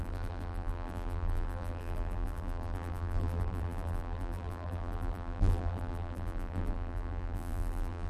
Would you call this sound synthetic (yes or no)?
yes